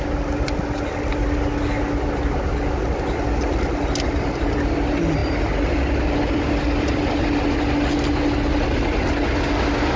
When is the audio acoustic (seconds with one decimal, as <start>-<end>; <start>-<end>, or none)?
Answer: 0.0-10.0